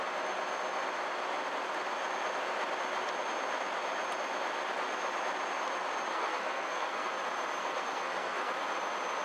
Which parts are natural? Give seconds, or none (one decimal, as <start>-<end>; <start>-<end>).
0.0-6.1; 7.1-7.6; 8.5-9.2